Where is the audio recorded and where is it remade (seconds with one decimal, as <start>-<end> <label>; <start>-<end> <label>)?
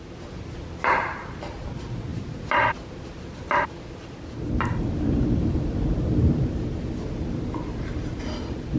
0.0-4.7 recorded; 4.7-6.9 remade; 6.9-8.8 recorded